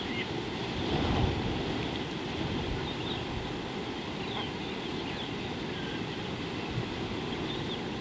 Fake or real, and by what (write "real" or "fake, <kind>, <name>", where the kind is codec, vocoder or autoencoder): real